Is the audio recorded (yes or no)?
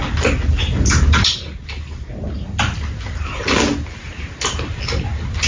yes